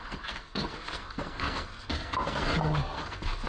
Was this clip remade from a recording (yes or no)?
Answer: yes